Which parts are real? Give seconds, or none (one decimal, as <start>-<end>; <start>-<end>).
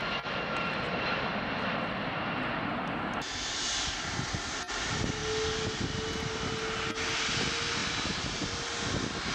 0.0-9.3